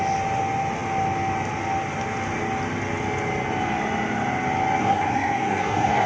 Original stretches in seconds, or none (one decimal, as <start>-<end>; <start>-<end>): 0.0-4.8

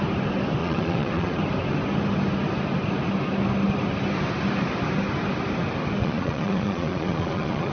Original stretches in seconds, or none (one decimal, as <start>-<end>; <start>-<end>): 0.0-0.6; 1.4-6.0

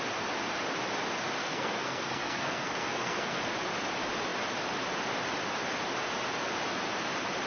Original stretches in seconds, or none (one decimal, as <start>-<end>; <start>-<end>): 0.0-1.4; 3.5-7.5

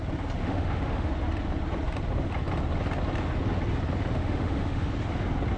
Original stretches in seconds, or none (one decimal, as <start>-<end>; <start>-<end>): 0.0-0.4; 1.1-4.2; 4.9-5.6